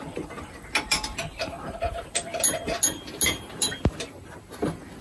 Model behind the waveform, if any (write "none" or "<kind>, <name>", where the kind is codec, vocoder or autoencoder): none